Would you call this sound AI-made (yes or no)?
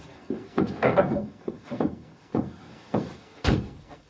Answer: yes